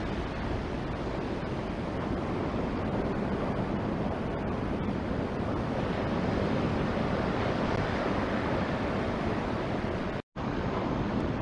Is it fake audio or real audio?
real